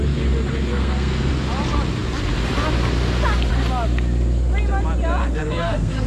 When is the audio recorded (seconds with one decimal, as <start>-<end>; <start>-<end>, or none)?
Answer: 0.0-0.7; 1.3-5.2